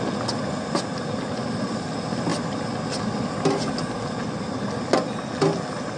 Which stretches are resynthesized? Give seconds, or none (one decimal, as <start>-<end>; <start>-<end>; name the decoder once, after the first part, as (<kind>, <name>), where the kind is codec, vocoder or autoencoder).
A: none